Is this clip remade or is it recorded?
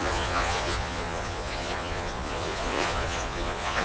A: remade